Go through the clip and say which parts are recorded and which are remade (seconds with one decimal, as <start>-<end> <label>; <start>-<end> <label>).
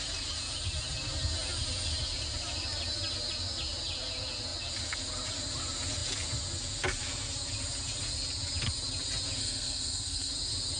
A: 0.0-9.4 recorded; 9.4-10.3 remade; 10.3-10.8 recorded